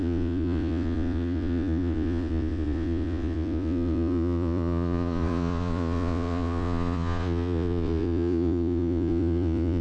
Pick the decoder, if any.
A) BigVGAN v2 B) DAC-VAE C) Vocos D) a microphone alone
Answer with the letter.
C